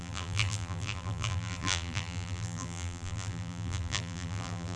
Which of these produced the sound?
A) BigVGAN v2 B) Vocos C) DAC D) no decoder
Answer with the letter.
A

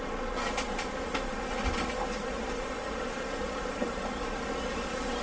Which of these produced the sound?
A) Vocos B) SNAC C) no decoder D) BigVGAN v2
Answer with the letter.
D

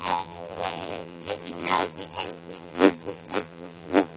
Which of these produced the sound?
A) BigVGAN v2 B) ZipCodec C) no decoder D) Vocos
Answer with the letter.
A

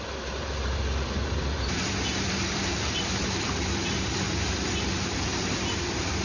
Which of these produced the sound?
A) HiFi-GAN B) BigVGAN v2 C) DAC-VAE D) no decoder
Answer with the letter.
B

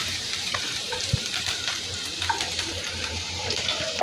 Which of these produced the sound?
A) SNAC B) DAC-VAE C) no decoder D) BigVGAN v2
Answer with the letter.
D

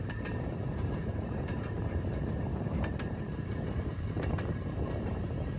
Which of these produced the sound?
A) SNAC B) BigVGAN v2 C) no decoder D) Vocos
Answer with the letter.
B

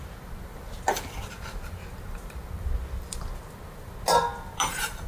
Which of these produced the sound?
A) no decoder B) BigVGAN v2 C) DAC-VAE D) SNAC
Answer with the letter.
A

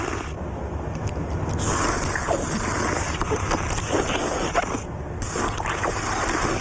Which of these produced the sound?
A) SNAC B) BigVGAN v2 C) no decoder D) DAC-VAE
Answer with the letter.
C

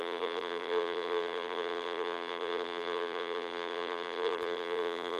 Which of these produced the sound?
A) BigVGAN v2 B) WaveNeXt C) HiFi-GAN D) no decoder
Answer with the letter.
A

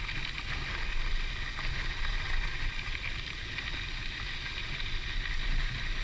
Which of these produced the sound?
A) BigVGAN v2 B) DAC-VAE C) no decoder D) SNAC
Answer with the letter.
C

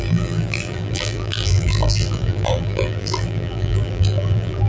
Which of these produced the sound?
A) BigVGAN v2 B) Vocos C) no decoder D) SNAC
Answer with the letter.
A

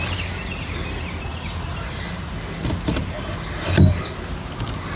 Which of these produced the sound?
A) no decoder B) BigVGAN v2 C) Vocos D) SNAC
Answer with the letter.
A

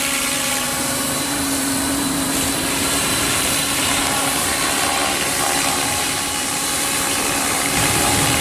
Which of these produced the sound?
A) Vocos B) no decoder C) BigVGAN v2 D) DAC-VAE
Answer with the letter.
C